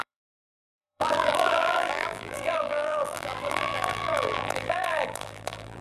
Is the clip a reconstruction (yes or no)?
yes